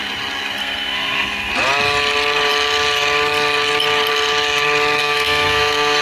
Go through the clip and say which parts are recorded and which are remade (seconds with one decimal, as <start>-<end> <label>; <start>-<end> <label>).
0.0-0.6 recorded; 0.6-1.5 remade; 1.5-5.0 recorded; 5.0-6.0 remade